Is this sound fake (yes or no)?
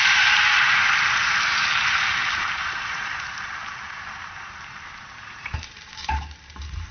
yes